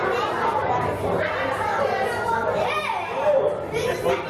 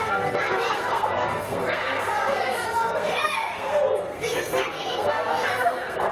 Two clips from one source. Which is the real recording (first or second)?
first